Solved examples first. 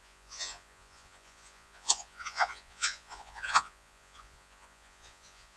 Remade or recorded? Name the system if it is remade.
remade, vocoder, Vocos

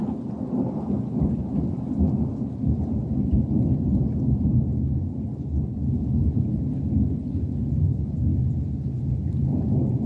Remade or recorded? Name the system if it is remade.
recorded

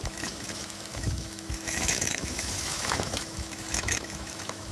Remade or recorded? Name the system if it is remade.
remade, autoencoder, DAC-VAE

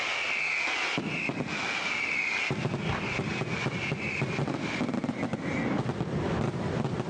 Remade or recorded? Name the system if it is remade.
recorded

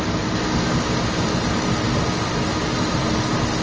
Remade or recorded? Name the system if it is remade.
recorded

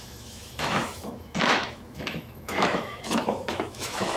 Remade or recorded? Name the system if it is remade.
remade, autoencoder, DAC-VAE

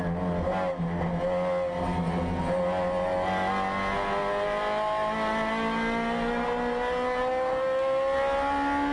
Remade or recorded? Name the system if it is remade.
recorded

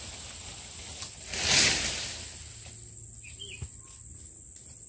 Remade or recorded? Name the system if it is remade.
recorded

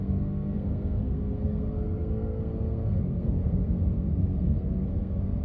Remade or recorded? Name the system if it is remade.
remade, codec, SNAC